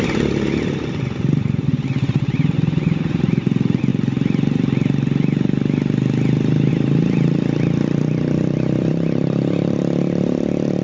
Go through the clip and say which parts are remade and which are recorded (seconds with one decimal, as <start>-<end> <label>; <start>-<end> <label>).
0.0-3.9 remade; 3.9-6.7 recorded; 6.7-10.8 remade